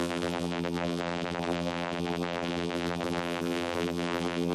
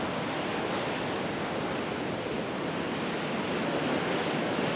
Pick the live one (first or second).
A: second